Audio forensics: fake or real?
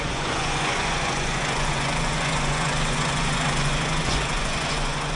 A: fake